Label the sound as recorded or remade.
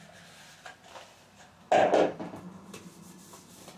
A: recorded